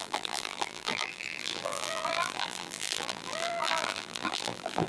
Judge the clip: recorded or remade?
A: remade